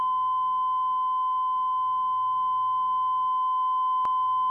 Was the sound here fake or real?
real